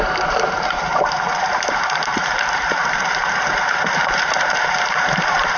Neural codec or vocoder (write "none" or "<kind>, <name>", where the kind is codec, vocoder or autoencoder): vocoder, BigVGAN v2